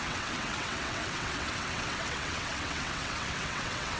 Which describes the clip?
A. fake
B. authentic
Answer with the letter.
A